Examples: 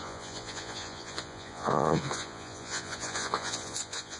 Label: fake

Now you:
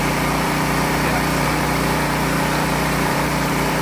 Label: fake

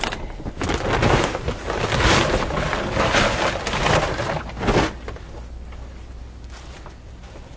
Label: real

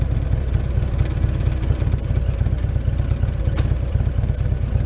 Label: real